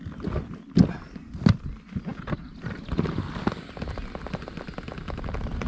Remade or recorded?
recorded